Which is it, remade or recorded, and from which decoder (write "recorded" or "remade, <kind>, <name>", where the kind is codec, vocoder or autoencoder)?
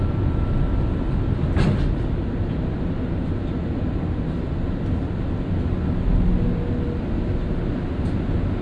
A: recorded